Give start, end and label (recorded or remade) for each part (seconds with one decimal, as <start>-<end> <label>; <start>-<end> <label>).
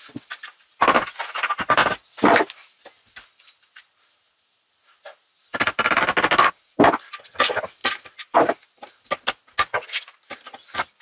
0.0-11.0 recorded